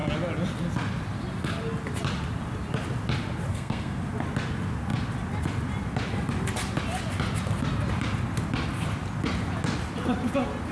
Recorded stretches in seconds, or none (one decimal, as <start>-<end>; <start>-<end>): 0.0-3.5; 4.0-10.7